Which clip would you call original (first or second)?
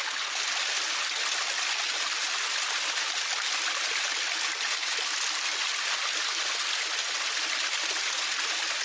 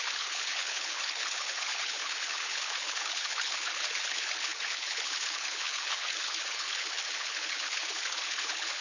first